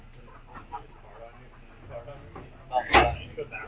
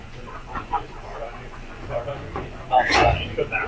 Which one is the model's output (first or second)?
second